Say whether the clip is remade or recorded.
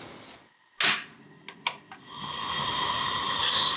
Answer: recorded